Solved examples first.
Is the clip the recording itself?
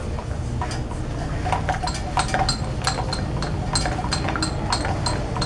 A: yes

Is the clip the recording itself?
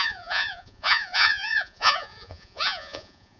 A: no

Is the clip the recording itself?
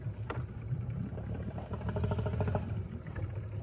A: no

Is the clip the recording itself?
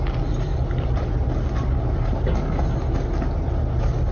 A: yes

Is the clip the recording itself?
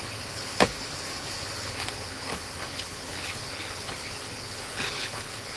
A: no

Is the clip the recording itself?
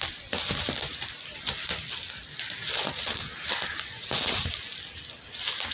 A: yes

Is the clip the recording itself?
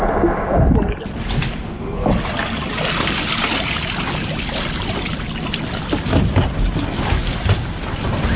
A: yes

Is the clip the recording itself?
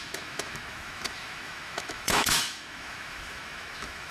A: no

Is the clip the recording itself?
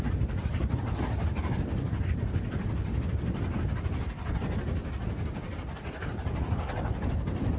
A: yes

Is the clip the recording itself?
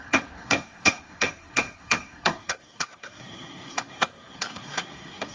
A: no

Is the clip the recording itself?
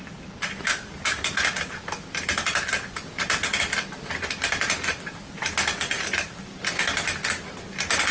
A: yes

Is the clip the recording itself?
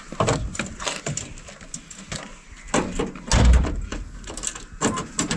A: yes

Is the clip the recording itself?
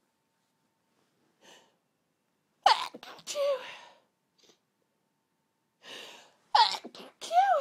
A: yes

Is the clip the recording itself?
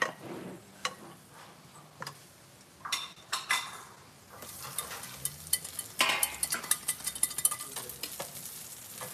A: yes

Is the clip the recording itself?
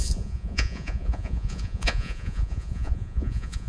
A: no